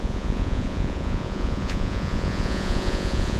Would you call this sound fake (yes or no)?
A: yes